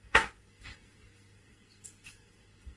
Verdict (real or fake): fake